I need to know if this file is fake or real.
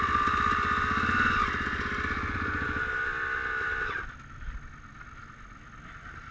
real